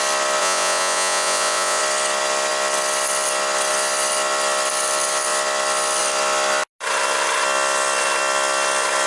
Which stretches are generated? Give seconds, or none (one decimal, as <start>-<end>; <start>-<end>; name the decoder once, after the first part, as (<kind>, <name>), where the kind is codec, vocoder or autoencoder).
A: 0.4-1.8 (vocoder, Vocos)

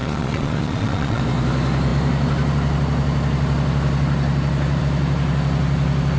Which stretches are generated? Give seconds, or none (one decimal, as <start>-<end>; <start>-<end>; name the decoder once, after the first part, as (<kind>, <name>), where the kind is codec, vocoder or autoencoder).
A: 0.0-1.2 (vocoder, Vocos)